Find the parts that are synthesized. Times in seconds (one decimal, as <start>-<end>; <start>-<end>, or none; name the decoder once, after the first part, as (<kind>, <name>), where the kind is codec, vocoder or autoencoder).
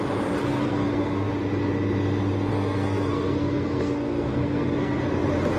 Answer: 0.5-1.3 (codec, SNAC); 2.5-5.0